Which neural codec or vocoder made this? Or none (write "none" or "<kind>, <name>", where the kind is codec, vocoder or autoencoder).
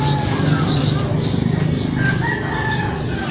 none